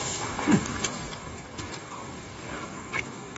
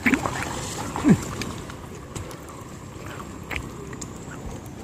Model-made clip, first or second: first